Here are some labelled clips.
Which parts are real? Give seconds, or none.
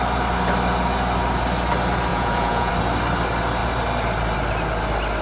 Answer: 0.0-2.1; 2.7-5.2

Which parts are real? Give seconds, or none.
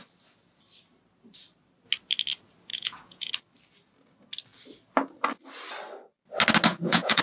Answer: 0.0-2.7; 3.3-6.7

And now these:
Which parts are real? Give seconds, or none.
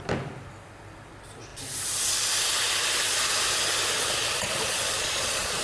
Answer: 0.0-4.0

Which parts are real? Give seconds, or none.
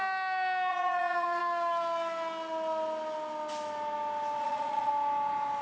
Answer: 0.0-0.7; 1.4-4.4; 4.9-5.6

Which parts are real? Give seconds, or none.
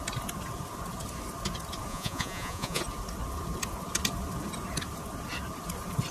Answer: 0.0-1.9; 2.8-6.1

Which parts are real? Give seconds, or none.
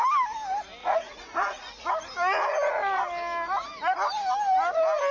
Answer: 0.0-0.8; 1.9-5.1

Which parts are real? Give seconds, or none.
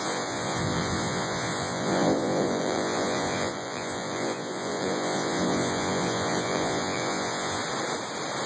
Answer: 7.6-8.5